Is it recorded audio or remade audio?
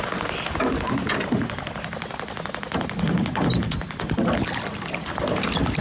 recorded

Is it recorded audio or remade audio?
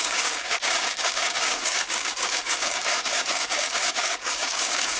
remade